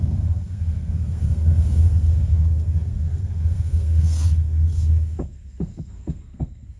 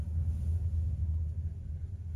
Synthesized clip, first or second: first